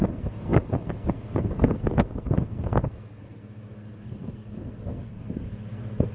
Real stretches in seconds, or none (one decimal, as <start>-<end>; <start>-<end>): none